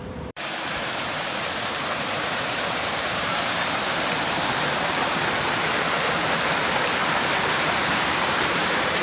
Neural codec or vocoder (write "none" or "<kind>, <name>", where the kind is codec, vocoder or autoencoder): vocoder, BigVGAN v2